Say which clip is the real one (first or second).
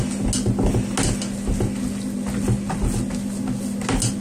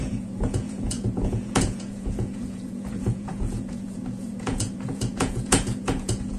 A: first